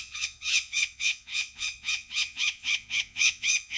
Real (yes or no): no